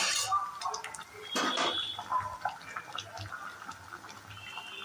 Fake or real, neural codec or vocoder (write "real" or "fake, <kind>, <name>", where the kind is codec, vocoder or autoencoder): real